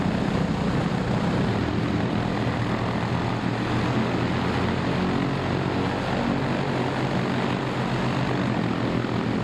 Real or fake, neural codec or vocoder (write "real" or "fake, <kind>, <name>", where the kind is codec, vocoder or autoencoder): real